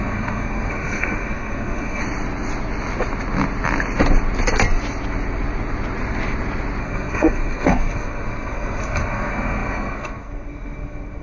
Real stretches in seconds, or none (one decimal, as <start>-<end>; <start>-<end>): 2.0-6.8